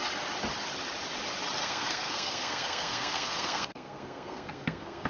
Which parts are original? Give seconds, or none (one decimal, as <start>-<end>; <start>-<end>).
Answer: 0.0-1.6